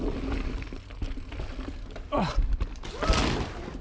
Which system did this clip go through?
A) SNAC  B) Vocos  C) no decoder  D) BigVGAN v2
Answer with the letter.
C